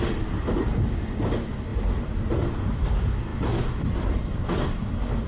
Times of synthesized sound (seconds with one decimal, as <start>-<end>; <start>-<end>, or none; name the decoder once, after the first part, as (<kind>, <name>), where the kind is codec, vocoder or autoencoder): none